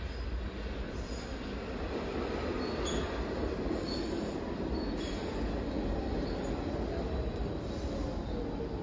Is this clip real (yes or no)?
yes